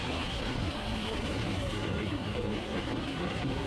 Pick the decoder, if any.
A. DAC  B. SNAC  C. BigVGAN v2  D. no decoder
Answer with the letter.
B